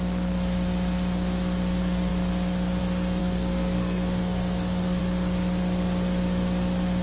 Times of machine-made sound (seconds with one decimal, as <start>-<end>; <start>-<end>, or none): 3.2-5.0